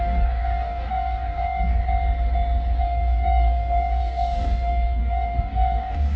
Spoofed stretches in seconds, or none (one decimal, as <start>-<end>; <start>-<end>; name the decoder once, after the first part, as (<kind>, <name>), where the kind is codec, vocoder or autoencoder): 0.0-1.8 (codec, DAC); 2.8-6.2